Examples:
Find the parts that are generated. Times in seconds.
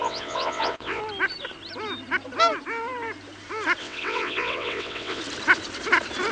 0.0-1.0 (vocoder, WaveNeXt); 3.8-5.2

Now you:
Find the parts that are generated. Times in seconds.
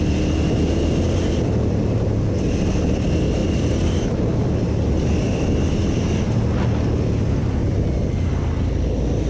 3.4-6.5 (vocoder, BigVGAN v2); 7.4-8.3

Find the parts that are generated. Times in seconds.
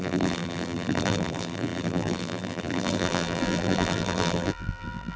0.0-5.2 (vocoder, BigVGAN v2)